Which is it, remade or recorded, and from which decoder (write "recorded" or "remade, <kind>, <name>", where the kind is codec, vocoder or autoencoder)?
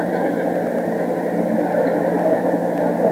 recorded